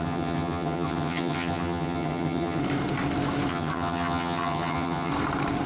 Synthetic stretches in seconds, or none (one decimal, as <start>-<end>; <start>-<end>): 0.0-2.6; 3.5-5.1